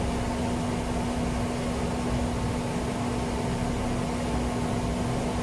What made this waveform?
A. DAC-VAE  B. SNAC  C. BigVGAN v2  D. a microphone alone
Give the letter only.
D